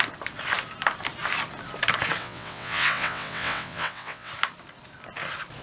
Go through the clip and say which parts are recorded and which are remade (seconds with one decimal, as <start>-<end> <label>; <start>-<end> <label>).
0.0-2.2 recorded; 2.2-4.3 remade; 4.3-5.6 recorded